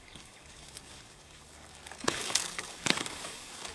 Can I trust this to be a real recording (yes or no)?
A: no